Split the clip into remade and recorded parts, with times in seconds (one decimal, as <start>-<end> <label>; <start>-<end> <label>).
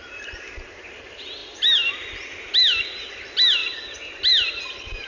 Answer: 0.0-5.1 recorded